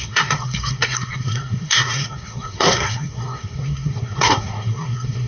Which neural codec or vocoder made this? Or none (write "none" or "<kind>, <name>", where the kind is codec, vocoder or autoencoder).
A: codec, SNAC